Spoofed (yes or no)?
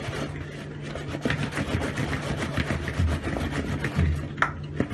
no